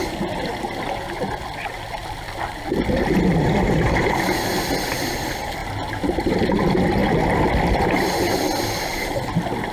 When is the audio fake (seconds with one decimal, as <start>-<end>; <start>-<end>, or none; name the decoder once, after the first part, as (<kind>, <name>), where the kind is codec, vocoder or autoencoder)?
5.6-6.5 (vocoder, BigVGAN v2)